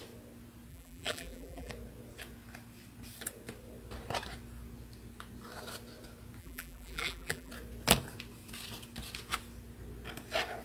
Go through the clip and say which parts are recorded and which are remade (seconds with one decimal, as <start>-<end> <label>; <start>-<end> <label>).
0.0-0.7 recorded; 0.7-1.7 remade; 1.7-6.4 recorded; 6.4-7.5 remade; 7.5-10.6 recorded